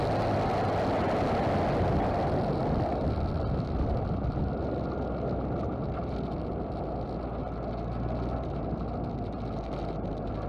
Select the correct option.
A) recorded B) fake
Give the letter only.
A